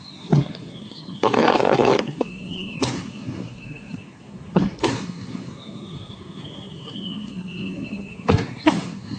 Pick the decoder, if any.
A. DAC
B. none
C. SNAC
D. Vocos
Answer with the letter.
C